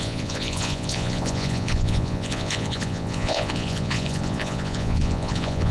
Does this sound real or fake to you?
fake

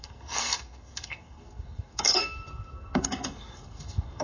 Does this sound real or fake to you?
fake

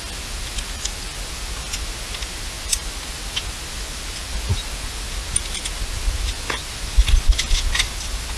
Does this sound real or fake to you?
real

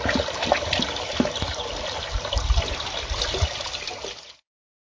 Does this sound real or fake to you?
real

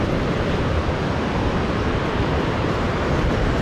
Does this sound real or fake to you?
real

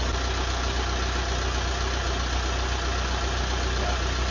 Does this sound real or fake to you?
real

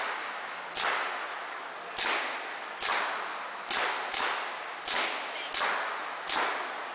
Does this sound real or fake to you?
real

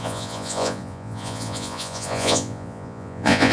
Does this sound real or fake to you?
fake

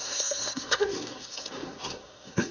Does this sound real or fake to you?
fake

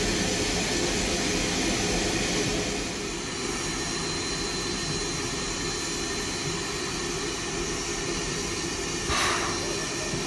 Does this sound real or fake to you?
real